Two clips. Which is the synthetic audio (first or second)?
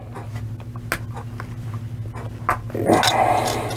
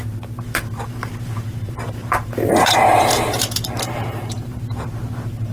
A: second